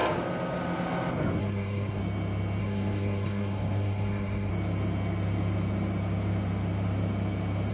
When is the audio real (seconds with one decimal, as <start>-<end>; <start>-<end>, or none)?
0.0-1.4; 2.0-2.6; 4.5-7.7